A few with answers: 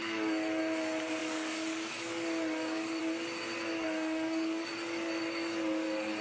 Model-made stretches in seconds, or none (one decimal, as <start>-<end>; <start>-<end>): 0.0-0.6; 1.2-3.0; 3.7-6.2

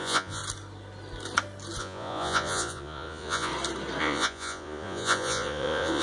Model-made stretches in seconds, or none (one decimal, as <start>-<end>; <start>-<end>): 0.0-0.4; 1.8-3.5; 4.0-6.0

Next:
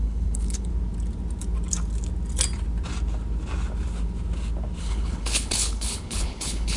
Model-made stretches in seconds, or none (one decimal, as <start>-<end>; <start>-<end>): 0.0-0.7; 4.8-6.8

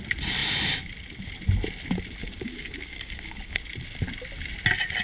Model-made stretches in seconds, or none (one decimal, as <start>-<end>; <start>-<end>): 2.2-3.6

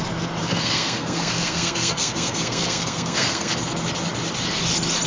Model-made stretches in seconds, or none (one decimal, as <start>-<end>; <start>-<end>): 0.4-3.5

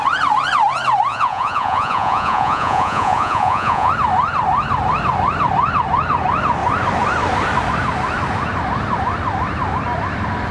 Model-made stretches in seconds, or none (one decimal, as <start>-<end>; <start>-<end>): 1.1-3.9